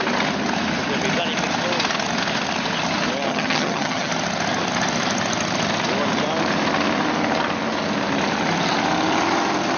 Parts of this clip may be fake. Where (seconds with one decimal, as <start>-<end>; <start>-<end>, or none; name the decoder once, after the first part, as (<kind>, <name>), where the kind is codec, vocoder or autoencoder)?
3.3-4.1 (vocoder, HiFi-GAN)